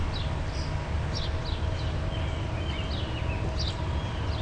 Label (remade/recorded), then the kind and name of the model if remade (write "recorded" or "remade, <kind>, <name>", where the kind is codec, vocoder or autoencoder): recorded